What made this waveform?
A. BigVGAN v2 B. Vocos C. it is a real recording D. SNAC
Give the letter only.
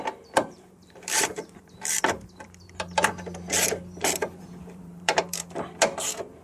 A